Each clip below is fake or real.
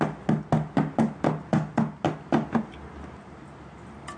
real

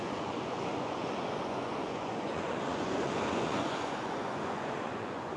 fake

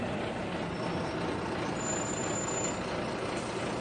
real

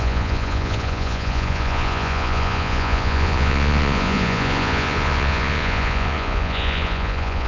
fake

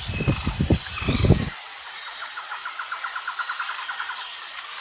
real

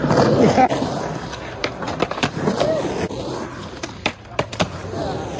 real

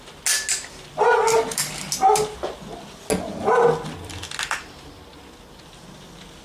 real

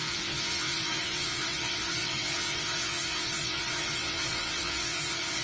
fake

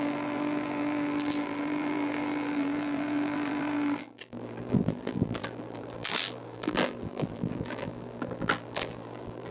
fake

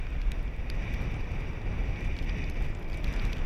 real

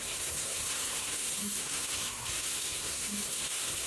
fake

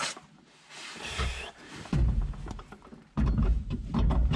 fake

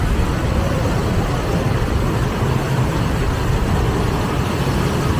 real